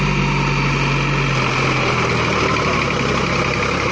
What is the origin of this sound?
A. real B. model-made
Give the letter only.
A